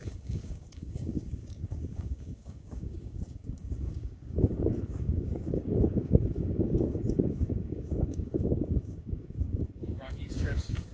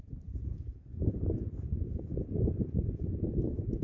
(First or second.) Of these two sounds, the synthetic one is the first